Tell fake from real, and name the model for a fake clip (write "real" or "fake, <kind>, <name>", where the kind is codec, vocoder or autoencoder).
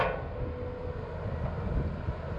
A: real